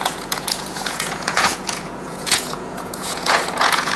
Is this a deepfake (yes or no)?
yes